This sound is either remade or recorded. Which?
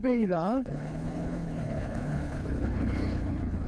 remade